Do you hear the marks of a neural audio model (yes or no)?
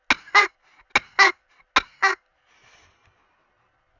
no